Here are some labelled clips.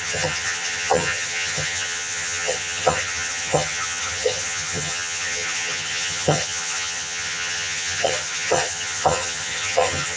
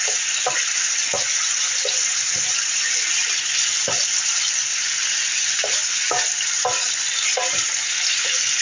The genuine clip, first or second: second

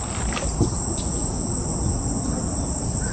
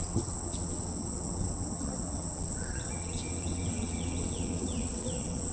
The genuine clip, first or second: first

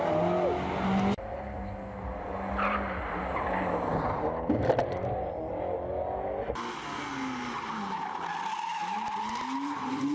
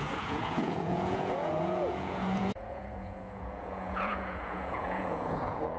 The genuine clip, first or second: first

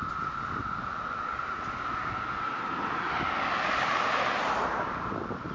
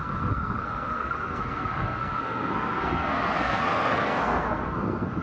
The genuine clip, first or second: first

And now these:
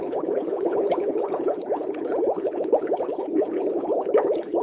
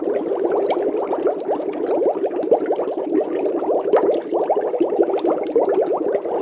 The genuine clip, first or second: second